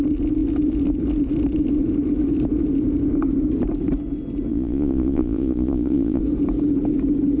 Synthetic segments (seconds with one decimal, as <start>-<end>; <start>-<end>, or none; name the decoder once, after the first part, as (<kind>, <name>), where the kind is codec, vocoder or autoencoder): 4.5-6.2 (vocoder, Vocos)